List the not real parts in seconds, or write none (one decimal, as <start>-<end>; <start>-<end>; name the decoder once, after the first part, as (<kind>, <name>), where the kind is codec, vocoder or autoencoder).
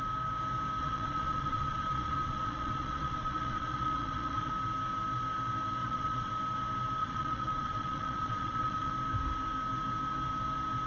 0.8-4.5 (vocoder, Vocos); 5.8-6.3; 7.0-8.9